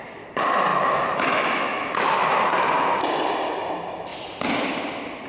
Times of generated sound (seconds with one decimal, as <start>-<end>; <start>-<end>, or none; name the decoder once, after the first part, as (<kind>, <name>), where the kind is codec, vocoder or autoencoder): 0.7-2.1 (autoencoder, DAC-VAE)